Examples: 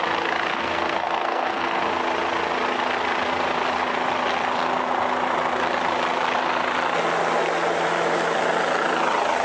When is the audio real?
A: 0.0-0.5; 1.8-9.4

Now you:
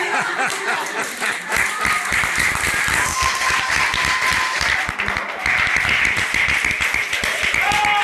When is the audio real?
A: 0.0-3.1; 3.6-8.0